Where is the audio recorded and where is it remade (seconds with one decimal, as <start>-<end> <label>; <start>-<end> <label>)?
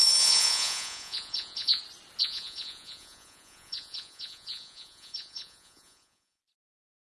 0.0-1.8 remade; 1.8-2.2 recorded; 2.2-6.4 remade; 6.4-7.2 recorded